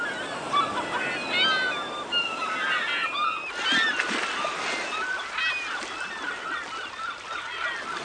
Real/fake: real